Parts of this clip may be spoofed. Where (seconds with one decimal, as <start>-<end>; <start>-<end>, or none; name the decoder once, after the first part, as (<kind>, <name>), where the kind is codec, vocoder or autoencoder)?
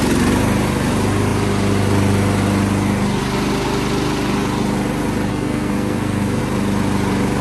5.3-6.4 (codec, SNAC)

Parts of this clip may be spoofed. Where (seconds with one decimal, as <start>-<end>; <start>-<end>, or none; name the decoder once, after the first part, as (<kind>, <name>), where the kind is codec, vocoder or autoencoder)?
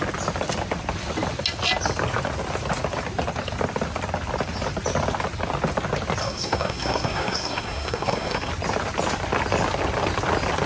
6.2-8.5 (codec, SNAC)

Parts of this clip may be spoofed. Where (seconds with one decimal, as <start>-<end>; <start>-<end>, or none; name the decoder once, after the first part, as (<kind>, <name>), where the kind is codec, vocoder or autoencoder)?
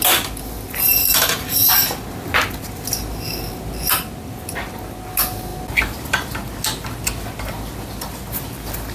none